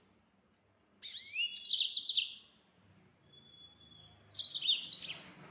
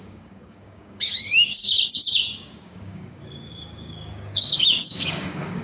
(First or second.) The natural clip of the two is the first